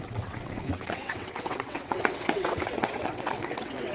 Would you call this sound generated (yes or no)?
yes